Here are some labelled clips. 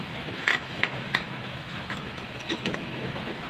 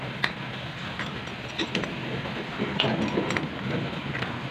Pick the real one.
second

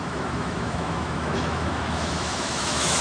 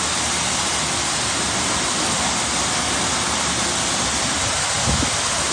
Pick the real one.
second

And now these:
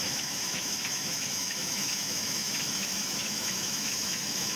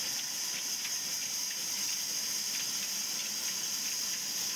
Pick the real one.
second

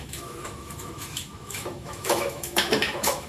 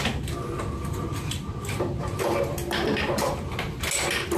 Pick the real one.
second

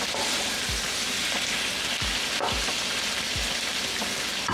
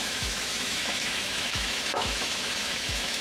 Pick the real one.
first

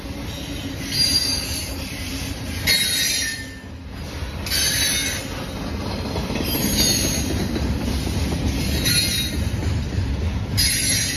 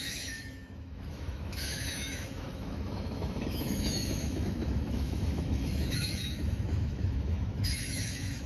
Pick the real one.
first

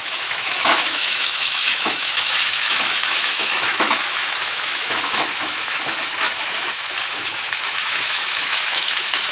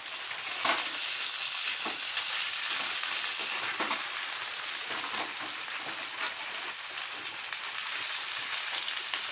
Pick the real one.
second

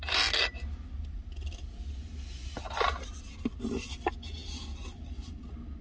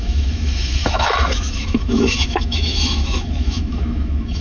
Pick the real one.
first